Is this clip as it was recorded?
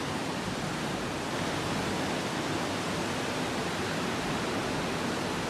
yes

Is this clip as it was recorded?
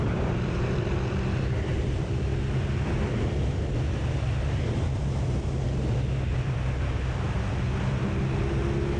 no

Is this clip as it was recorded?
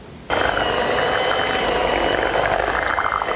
no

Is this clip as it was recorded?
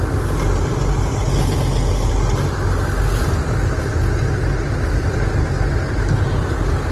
yes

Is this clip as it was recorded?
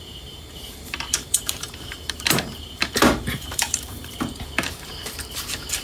no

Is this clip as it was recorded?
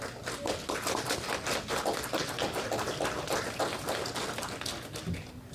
yes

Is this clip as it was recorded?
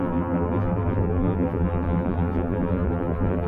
no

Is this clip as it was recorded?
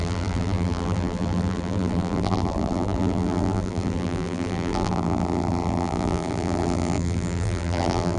no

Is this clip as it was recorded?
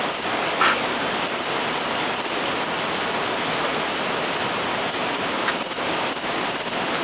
yes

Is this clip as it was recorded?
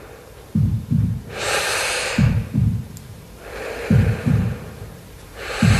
no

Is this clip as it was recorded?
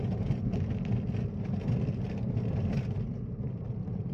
yes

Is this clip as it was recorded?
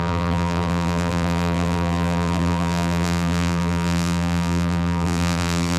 no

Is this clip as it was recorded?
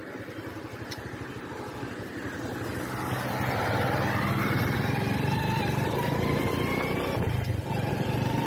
yes